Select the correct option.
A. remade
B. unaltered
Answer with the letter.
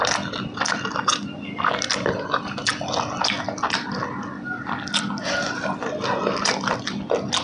B